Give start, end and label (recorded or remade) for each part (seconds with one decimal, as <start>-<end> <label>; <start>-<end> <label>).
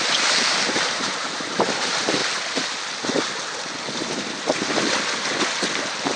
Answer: 0.0-2.2 remade; 2.2-5.7 recorded; 5.7-6.2 remade